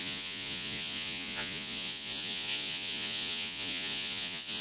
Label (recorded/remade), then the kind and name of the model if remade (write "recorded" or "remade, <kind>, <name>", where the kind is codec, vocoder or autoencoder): remade, vocoder, Vocos